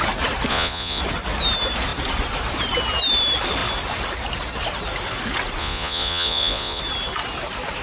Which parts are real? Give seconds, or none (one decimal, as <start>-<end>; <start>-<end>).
0.0-0.5; 1.0-5.6; 6.8-7.8